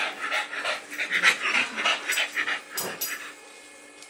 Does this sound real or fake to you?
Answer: real